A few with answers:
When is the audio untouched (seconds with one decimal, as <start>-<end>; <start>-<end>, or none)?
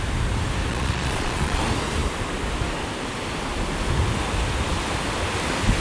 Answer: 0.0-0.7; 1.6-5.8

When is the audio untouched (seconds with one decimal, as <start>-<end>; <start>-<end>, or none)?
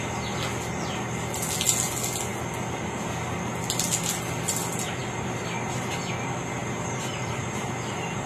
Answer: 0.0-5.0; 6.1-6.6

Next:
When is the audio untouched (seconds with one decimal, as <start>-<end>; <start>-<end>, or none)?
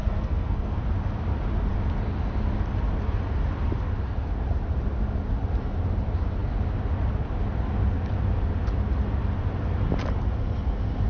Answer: 0.8-11.1